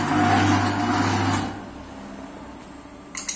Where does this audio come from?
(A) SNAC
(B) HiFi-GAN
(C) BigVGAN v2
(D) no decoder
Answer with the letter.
D